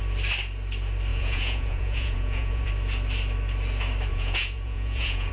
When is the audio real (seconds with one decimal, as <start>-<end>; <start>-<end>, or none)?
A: 0.0-1.1; 2.7-4.1